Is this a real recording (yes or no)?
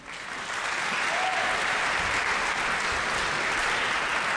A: yes